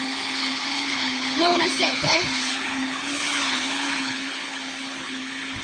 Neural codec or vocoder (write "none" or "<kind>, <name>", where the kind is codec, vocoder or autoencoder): codec, HILCodec